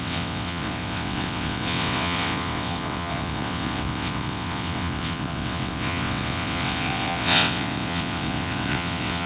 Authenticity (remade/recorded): remade